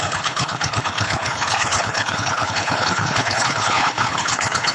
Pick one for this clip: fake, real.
fake